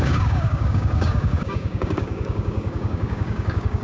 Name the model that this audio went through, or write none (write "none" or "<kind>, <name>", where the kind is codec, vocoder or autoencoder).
codec, DAC